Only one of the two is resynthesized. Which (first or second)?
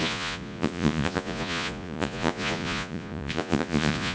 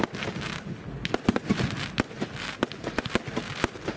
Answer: first